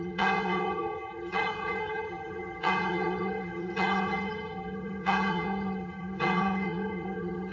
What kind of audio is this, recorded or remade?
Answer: remade